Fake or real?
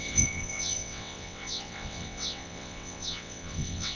fake